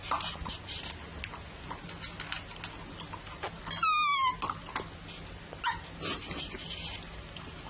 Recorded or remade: recorded